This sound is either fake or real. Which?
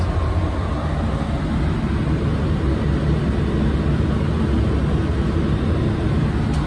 real